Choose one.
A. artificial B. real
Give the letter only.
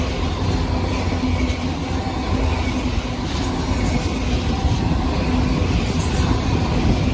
B